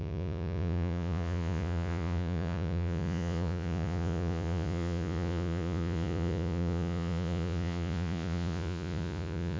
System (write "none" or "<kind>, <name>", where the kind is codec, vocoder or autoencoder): vocoder, Vocos